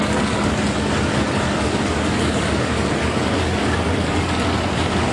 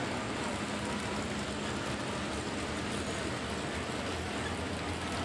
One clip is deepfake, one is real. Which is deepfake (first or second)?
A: first